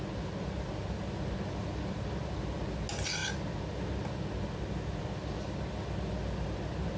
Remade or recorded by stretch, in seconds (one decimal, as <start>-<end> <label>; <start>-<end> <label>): 0.0-7.0 recorded